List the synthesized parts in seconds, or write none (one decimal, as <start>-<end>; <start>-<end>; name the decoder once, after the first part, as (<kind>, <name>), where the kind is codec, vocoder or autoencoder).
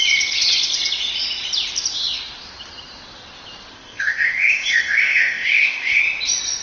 3.7-6.0 (codec, ZipCodec)